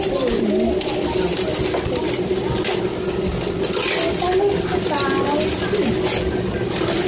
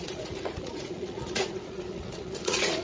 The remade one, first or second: second